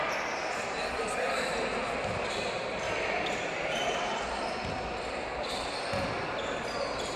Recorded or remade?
remade